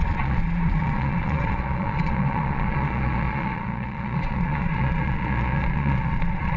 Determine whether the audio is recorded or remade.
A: remade